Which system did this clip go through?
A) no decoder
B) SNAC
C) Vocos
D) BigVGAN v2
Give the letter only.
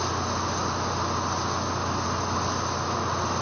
A